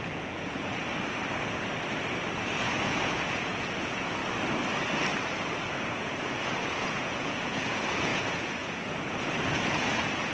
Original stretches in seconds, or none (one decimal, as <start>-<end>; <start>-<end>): 0.9-2.5; 4.2-5.7